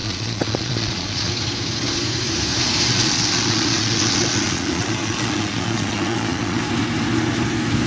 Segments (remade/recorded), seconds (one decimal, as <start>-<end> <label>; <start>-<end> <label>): 0.0-1.3 remade; 1.3-2.9 recorded; 2.9-6.6 remade; 6.6-7.9 recorded